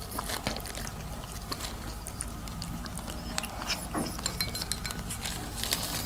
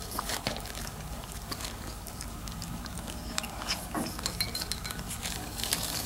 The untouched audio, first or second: first